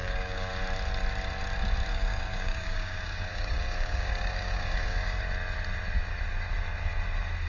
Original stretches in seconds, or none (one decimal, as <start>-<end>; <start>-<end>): 0.5-1.9; 5.2-7.5